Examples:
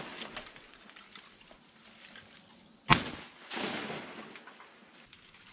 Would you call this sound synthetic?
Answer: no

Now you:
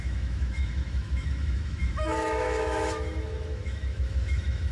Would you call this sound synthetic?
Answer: yes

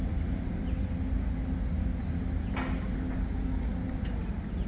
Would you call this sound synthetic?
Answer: no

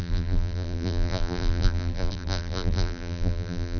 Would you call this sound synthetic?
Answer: yes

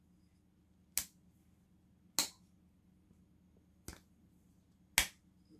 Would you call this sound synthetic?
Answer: no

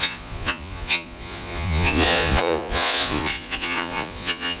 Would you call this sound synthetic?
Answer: yes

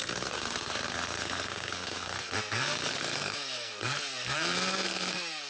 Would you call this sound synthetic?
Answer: yes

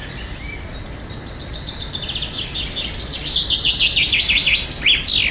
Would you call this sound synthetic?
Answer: no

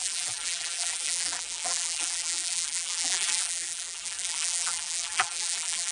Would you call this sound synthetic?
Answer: yes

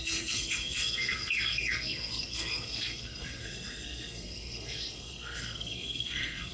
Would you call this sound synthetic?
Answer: yes